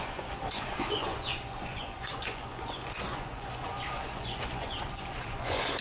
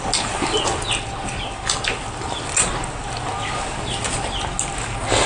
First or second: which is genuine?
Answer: second